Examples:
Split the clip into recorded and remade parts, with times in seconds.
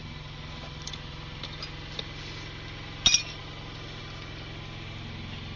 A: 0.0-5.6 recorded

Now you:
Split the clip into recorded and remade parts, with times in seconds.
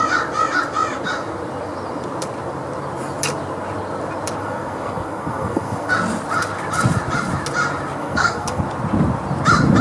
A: 0.0-4.4 recorded; 4.4-5.9 remade; 5.9-8.0 recorded; 8.0-8.6 remade; 8.6-9.8 recorded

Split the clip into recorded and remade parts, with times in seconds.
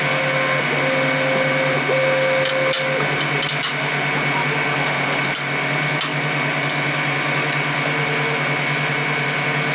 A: 0.0-9.7 recorded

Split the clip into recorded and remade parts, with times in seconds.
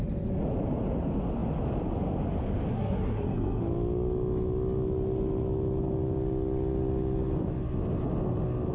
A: 0.0-2.7 recorded; 2.7-3.6 remade; 3.6-8.7 recorded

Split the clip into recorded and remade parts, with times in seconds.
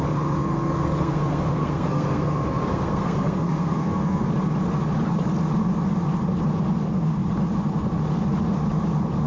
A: 0.0-0.4 recorded; 0.4-4.3 remade; 4.3-9.3 recorded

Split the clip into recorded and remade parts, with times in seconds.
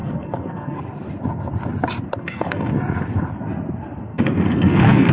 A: 0.0-0.8 remade; 0.8-2.2 recorded; 2.2-2.7 remade; 2.7-4.1 recorded; 4.1-5.1 remade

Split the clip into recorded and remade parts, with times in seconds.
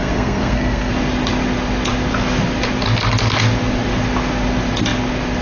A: 0.0-0.9 remade; 0.9-5.4 recorded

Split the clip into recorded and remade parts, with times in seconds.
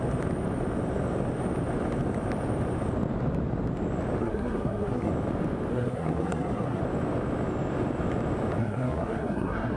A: 0.0-4.2 recorded; 4.2-5.1 remade; 5.1-5.7 recorded; 5.7-6.8 remade; 6.8-8.6 recorded; 8.6-9.8 remade